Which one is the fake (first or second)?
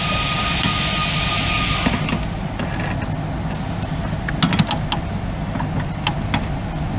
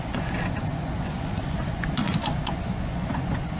second